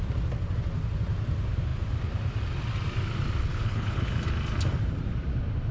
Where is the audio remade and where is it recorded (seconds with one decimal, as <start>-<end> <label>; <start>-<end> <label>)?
0.0-3.4 recorded; 3.4-4.1 remade; 4.1-5.7 recorded